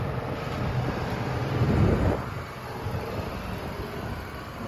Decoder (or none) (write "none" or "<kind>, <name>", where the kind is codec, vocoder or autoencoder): none